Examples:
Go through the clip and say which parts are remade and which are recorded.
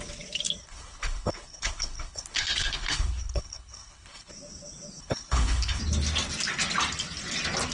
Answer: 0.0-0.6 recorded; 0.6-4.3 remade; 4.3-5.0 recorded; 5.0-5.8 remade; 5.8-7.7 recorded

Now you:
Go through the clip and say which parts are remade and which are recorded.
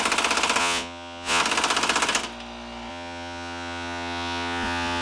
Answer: 0.0-0.6 recorded; 0.6-1.4 remade; 1.4-2.9 recorded; 2.9-5.0 remade